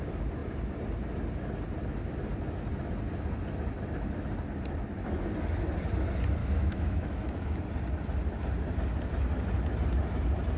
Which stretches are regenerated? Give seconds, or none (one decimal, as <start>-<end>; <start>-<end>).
6.4-7.6